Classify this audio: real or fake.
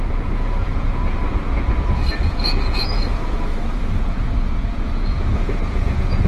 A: fake